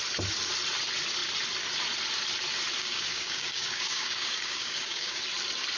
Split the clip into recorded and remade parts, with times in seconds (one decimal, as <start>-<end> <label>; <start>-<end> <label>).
0.0-2.8 recorded; 2.8-5.2 remade; 5.2-5.8 recorded